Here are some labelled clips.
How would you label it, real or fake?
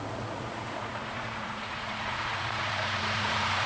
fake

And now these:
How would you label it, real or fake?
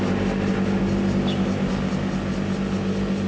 real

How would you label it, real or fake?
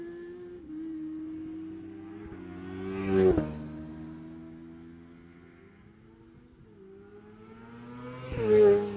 real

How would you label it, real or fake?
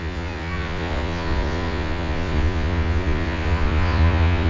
fake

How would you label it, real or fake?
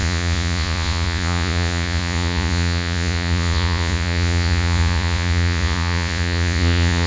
fake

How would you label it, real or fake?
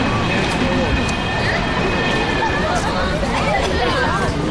real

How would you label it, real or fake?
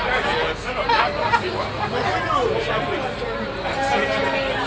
real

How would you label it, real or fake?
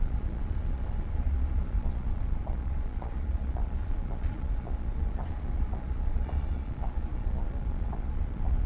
fake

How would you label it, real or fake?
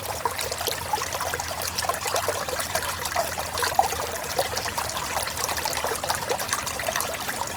real